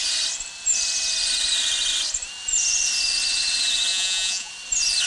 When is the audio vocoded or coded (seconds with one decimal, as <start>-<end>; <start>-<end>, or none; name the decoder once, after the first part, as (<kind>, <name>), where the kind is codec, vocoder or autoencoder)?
3.9-4.5 (vocoder, Vocos)